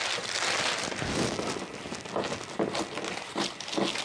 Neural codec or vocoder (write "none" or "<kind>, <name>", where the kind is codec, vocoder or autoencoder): none